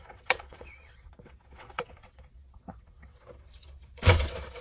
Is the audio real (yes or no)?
no